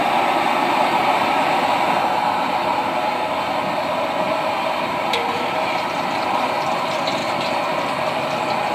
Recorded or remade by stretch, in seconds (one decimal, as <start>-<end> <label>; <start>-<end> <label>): 0.0-7.2 recorded; 7.2-8.7 remade